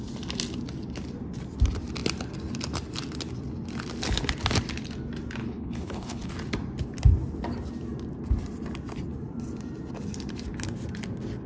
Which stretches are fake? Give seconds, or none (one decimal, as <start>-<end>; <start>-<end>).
5.4-6.3